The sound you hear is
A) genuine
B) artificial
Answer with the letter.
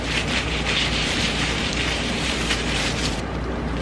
B